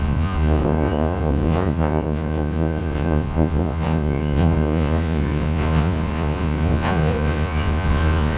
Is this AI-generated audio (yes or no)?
yes